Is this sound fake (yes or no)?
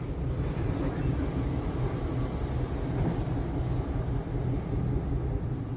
no